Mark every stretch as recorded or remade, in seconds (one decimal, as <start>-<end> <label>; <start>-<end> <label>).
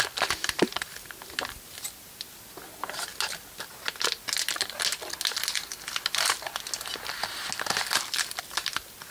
0.0-9.1 recorded